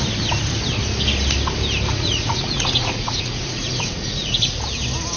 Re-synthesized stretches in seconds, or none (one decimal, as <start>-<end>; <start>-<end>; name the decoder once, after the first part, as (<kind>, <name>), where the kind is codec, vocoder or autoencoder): 1.9-4.6 (vocoder, Vocos)